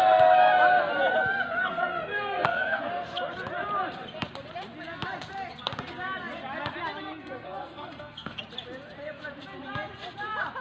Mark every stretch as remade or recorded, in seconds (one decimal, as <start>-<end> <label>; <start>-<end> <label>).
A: 0.0-1.6 recorded; 1.6-2.9 remade; 2.9-7.0 recorded; 7.0-8.4 remade; 8.4-10.6 recorded